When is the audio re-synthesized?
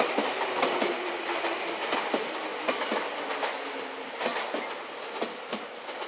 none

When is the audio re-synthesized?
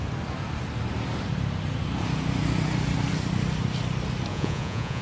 4.3-5.0 (vocoder, Vocos)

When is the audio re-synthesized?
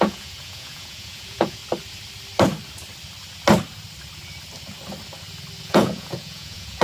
0.0-1.6 (vocoder, Vocos); 5.6-6.8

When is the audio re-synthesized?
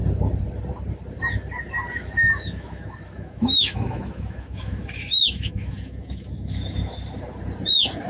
2.0-6.9 (autoencoder, DAC-VAE)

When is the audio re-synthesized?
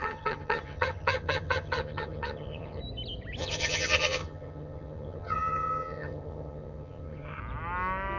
0.0-2.8 (vocoder, HiFi-GAN); 3.4-7.4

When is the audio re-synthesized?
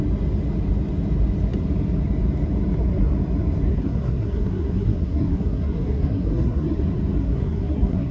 3.7-6.8 (codec, SNAC); 7.2-8.1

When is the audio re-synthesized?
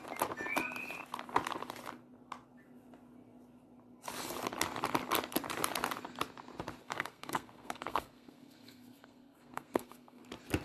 6.8-10.2 (codec, SNAC)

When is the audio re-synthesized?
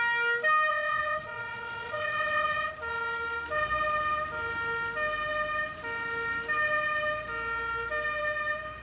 0.7-2.7 (vocoder, WaveNeXt)